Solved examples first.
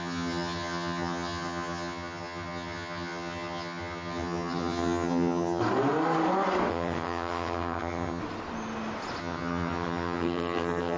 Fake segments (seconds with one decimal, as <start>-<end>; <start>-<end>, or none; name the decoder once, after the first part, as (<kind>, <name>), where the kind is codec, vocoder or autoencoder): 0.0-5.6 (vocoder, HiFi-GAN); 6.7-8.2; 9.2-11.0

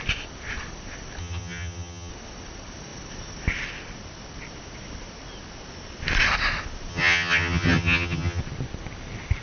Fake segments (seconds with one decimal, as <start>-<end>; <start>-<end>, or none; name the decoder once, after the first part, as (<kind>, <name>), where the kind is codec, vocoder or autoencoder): 1.2-2.1 (vocoder, HiFi-GAN); 6.9-8.4

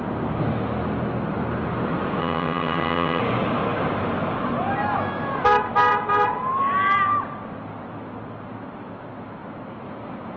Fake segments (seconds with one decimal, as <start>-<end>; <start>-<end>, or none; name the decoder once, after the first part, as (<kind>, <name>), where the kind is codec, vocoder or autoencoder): 2.2-3.2 (vocoder, HiFi-GAN)